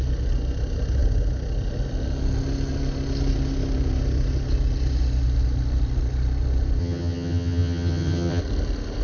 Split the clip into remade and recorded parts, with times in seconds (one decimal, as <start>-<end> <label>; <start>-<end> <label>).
0.0-6.8 recorded; 6.8-8.4 remade; 8.4-9.0 recorded